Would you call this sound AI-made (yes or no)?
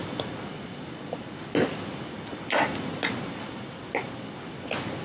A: no